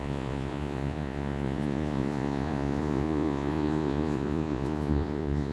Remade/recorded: remade